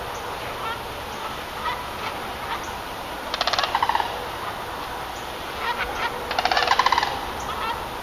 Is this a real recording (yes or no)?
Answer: yes